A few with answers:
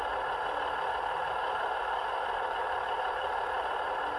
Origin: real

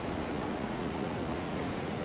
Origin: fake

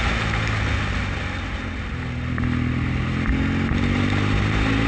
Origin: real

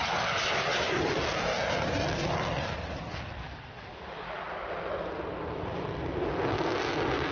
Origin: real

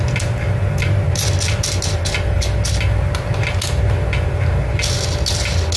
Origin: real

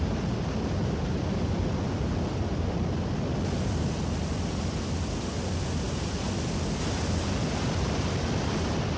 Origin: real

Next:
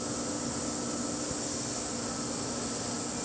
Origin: real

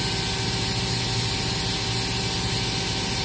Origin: real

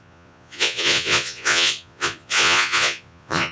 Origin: fake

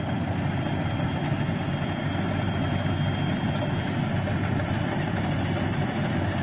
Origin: real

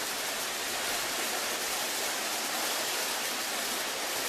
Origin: real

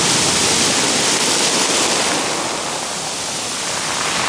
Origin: real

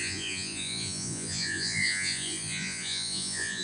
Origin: fake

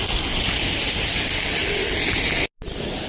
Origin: real